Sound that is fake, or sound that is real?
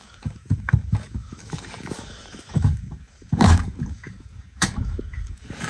fake